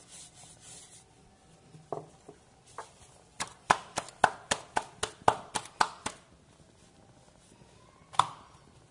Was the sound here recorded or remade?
recorded